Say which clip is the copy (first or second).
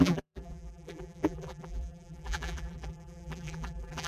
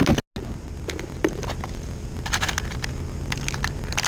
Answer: first